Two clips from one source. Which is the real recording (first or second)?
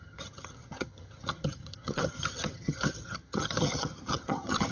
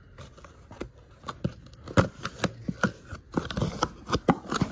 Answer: second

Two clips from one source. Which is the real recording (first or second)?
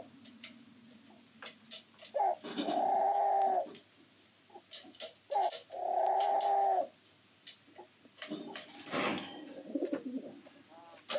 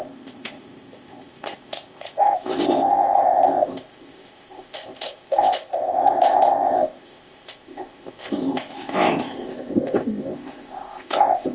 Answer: first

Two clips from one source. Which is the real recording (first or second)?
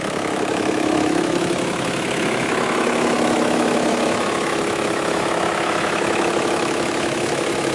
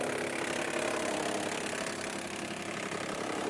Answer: second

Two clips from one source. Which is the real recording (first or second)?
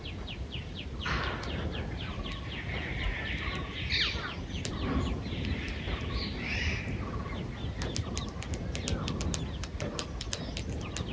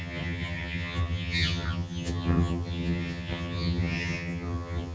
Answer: first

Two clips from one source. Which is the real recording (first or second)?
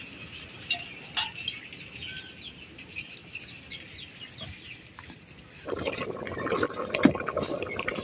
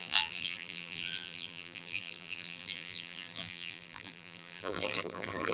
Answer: first